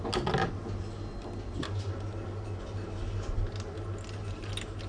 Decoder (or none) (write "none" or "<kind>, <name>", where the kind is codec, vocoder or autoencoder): none